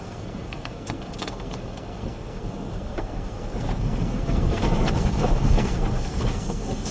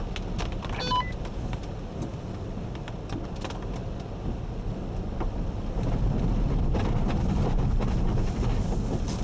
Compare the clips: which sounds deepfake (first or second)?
first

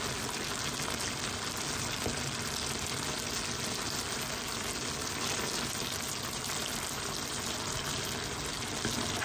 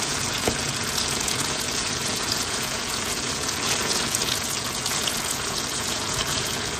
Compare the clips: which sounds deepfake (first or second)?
second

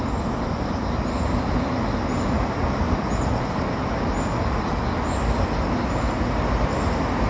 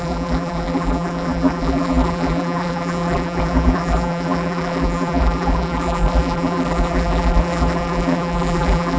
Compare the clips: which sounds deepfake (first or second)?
second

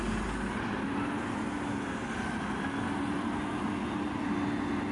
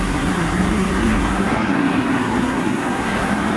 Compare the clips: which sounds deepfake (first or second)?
second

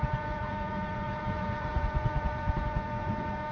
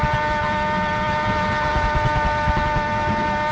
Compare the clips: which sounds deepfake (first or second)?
first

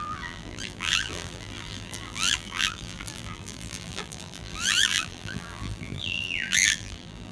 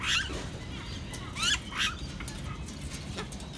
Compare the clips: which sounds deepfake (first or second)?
first